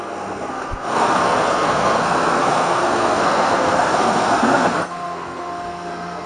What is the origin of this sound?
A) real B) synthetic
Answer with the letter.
B